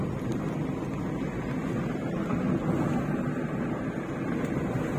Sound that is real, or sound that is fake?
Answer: real